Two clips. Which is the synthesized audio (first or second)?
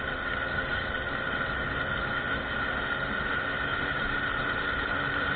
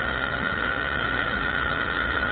second